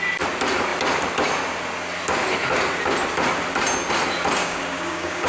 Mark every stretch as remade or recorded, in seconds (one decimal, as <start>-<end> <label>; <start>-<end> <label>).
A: 0.0-4.4 recorded; 4.4-5.3 remade